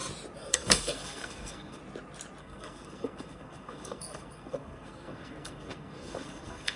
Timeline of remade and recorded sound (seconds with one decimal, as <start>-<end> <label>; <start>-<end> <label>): 0.0-0.5 recorded; 0.5-1.8 remade; 1.8-2.4 recorded; 2.4-6.8 remade